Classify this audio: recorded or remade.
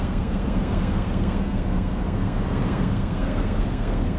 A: remade